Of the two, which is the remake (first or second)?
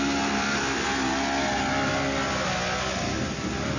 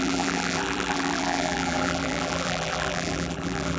second